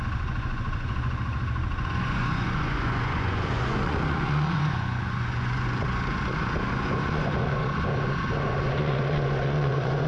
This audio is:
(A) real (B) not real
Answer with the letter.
B